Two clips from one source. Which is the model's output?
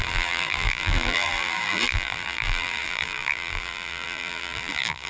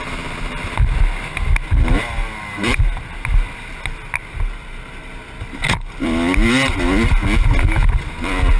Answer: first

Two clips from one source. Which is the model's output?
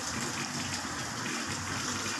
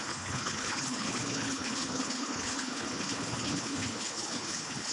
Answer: second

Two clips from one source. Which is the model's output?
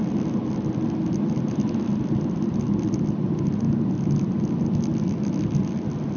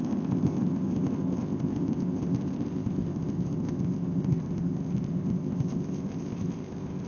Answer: second